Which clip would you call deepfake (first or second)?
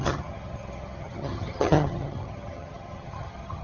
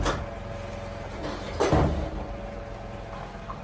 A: first